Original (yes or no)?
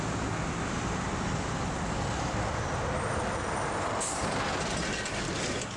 yes